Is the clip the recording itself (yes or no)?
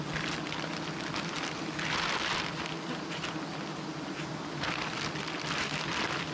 yes